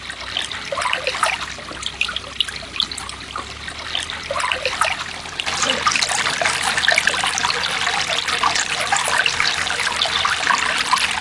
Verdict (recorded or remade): recorded